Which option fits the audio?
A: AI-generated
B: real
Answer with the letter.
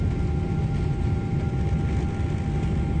B